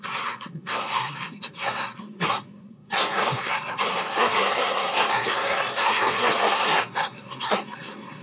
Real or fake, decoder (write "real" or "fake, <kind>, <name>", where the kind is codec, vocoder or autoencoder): fake, codec, SNAC